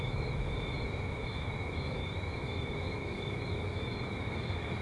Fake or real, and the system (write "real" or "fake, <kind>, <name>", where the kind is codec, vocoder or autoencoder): fake, autoencoder, DAC-VAE